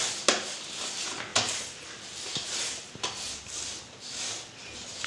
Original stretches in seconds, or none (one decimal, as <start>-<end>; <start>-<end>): 0.0-5.1